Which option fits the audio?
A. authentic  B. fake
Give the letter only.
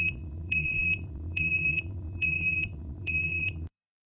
B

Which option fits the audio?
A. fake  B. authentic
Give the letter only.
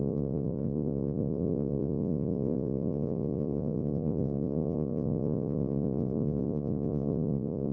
A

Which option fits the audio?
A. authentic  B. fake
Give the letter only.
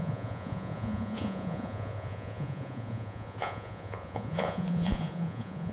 B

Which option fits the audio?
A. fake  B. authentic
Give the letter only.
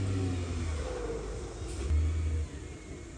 B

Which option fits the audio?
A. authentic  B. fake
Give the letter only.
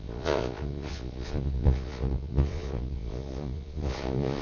B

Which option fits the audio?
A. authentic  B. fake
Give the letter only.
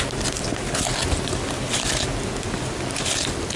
A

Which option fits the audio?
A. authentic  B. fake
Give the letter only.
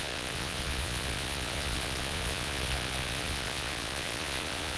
B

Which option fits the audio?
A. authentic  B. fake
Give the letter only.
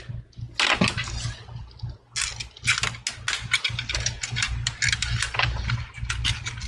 A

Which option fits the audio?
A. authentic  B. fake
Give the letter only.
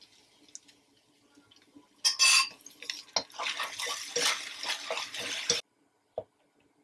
A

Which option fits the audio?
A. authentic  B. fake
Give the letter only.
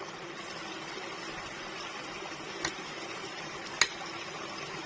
A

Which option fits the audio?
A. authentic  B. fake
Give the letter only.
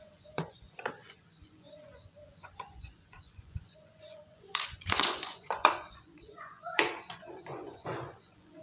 B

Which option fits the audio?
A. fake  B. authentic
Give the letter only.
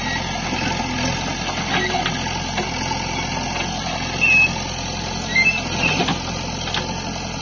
B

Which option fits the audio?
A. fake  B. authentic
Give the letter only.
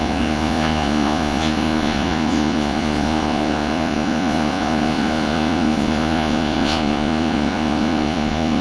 A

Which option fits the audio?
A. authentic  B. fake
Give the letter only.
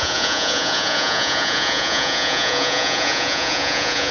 B